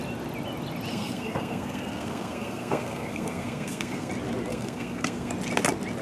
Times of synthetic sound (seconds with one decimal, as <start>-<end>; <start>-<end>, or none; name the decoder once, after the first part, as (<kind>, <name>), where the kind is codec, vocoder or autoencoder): 0.9-4.1 (codec, SNAC); 4.5-5.3